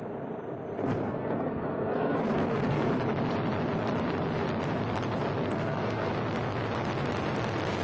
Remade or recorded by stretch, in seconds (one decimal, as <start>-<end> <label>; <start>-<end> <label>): 0.0-0.8 recorded; 0.8-2.9 remade; 2.9-5.4 recorded; 5.4-6.1 remade; 6.1-7.8 recorded